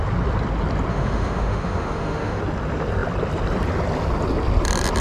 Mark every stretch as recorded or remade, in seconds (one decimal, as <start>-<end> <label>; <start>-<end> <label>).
0.0-0.9 recorded; 0.9-2.4 remade; 2.4-5.0 recorded